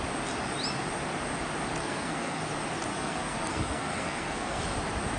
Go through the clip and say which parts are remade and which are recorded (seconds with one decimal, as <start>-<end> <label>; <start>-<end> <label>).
0.0-1.8 recorded; 1.8-2.4 remade; 2.4-2.9 recorded; 2.9-4.6 remade; 4.6-5.2 recorded